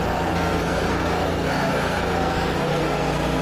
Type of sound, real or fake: fake